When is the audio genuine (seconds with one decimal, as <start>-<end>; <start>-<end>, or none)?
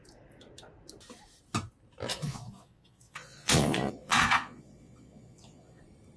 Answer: 0.0-2.1; 5.8-6.2